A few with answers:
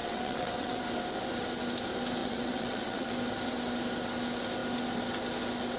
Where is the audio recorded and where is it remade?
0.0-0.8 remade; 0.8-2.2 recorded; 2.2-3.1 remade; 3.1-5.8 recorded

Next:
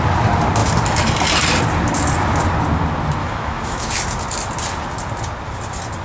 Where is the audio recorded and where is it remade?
0.0-3.2 recorded; 3.2-3.9 remade; 3.9-6.0 recorded

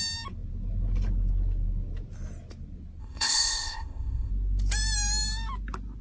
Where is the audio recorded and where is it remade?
0.0-3.0 recorded; 3.0-4.3 remade; 4.3-6.0 recorded

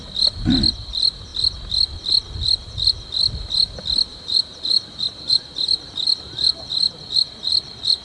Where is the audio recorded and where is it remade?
0.0-4.1 recorded; 4.1-8.0 remade

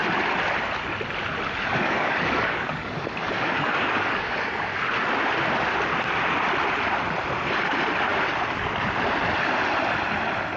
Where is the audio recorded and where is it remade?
0.0-1.7 recorded; 1.7-4.7 remade; 4.7-10.6 recorded